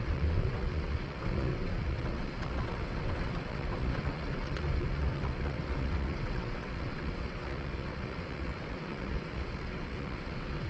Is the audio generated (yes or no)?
yes